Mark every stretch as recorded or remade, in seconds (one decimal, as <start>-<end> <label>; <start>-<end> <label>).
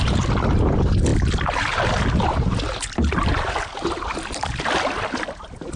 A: 0.0-5.8 recorded